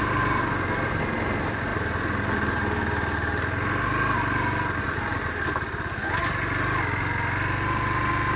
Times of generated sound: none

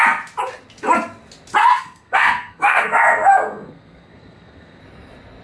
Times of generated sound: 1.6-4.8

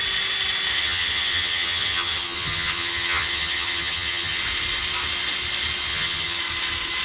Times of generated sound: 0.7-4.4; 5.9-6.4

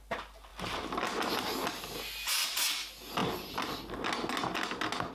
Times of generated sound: none

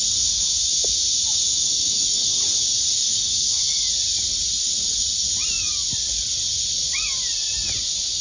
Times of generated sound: 1.5-2.4; 3.0-3.8

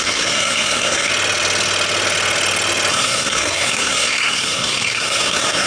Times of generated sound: 0.0-1.1; 2.9-5.7